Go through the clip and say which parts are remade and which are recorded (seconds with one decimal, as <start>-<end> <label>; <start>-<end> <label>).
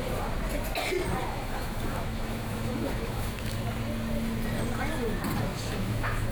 0.0-1.2 recorded; 1.2-3.6 remade; 3.6-5.5 recorded; 5.5-6.3 remade